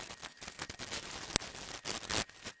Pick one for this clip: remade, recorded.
recorded